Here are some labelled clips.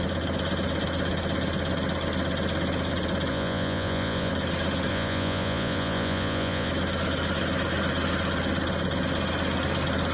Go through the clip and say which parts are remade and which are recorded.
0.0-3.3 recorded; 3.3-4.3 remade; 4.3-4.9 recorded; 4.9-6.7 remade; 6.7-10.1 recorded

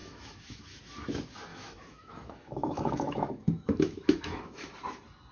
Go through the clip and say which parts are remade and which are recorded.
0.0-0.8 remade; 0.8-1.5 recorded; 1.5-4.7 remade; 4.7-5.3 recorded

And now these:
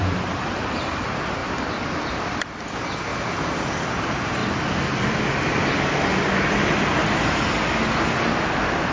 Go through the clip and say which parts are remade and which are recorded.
0.0-3.1 remade; 3.1-3.8 recorded; 3.8-7.0 remade; 7.0-8.4 recorded; 8.4-8.9 remade

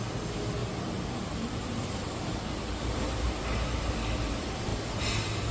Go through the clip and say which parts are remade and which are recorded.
0.0-0.6 recorded; 0.6-3.9 remade; 3.9-5.5 recorded

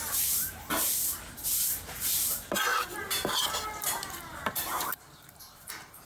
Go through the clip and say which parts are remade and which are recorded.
0.0-1.0 remade; 1.0-1.6 recorded; 1.6-6.1 remade